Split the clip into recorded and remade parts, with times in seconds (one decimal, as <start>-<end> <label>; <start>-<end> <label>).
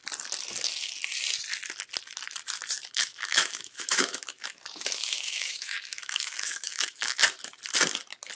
0.0-2.8 recorded; 2.8-7.2 remade; 7.2-8.4 recorded